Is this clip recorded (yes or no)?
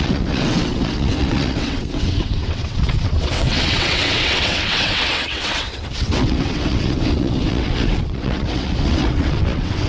no